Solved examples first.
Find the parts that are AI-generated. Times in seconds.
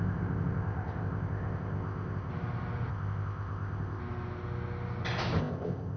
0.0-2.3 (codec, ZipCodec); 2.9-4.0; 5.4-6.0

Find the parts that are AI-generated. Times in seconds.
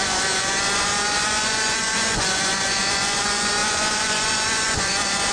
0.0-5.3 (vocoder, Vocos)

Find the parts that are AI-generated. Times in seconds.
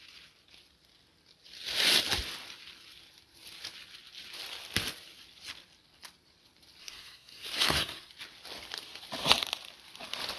6.8-8.1 (codec, SNAC)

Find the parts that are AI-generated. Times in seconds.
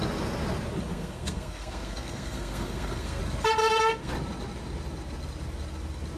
0.9-3.2 (codec, SNAC); 3.6-4.1